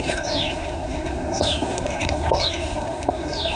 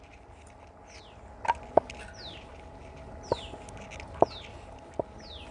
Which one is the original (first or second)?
second